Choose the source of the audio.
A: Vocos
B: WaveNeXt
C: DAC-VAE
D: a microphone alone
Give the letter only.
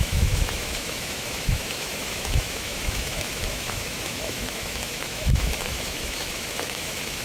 C